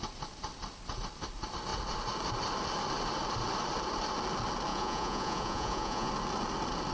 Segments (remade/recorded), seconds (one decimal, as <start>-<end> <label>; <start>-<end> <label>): 0.0-4.7 recorded; 4.7-6.1 remade; 6.1-6.9 recorded